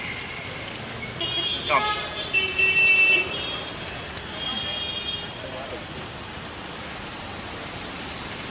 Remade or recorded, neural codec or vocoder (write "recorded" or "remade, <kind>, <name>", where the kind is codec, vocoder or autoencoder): recorded